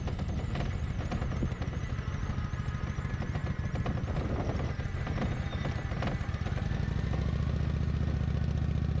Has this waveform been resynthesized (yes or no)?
no